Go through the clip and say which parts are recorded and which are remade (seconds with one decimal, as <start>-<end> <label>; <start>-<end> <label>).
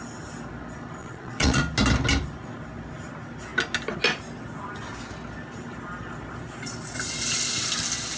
0.0-1.0 recorded; 1.0-1.6 remade; 1.6-8.2 recorded